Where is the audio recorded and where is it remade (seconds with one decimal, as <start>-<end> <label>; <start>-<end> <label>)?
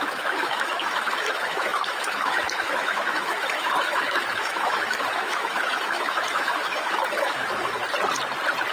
0.0-7.8 remade; 7.8-8.7 recorded